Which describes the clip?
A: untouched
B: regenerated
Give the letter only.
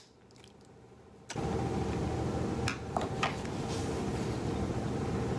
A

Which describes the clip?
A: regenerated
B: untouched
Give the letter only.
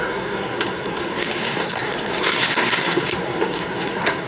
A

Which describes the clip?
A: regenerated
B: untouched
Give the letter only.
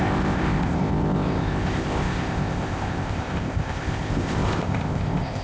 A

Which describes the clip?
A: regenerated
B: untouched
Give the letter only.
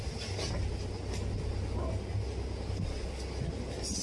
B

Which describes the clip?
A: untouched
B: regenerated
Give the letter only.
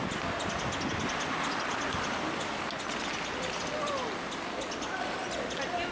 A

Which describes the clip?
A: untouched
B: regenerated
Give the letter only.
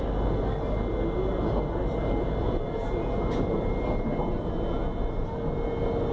A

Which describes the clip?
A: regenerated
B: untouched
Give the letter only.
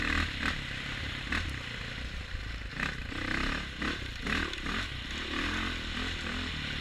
B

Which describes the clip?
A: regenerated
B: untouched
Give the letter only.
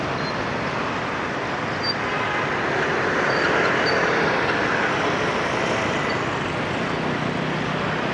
B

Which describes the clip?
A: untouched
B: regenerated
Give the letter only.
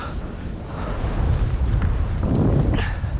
A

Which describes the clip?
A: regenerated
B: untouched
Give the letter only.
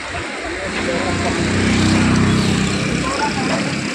B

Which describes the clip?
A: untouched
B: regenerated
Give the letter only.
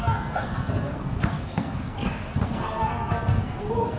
B